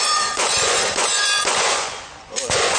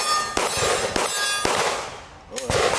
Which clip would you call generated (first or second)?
first